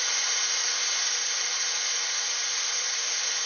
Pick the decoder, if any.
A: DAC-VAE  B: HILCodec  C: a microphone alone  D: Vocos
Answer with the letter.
D